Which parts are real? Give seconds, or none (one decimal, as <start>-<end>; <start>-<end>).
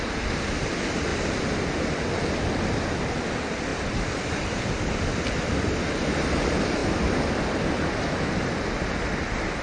1.1-3.3